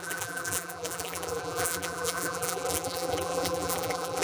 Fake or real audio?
fake